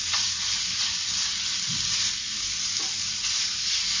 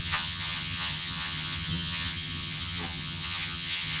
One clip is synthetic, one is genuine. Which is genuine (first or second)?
first